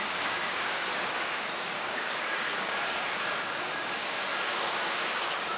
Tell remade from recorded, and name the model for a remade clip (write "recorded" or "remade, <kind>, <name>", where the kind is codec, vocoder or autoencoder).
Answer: remade, codec, DAC